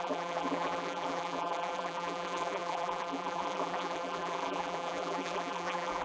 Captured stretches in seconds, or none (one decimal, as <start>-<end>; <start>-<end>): none